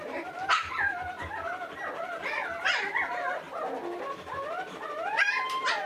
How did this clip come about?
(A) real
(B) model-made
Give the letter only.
A